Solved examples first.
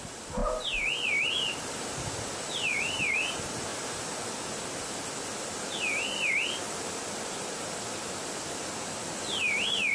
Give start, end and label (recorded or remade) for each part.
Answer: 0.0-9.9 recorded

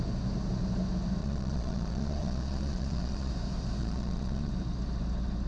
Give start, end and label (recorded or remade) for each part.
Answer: 0.0-1.2 recorded; 1.2-3.3 remade; 3.3-3.8 recorded; 3.8-4.5 remade; 4.5-5.5 recorded